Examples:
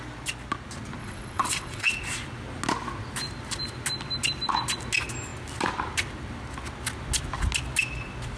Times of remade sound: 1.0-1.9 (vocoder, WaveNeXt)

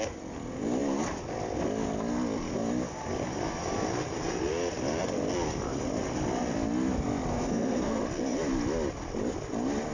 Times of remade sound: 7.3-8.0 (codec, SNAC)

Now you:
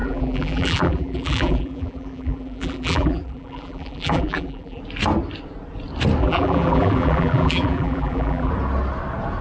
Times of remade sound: 0.0-4.8 (vocoder, BigVGAN v2); 6.2-8.5